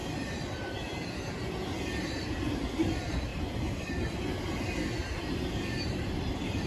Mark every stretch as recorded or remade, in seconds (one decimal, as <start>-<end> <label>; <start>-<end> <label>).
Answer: 0.0-2.2 recorded; 2.2-3.3 remade; 3.3-5.8 recorded; 5.8-6.7 remade